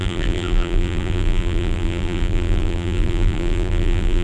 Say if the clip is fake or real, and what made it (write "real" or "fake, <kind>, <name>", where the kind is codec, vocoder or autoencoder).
fake, vocoder, BigVGAN v2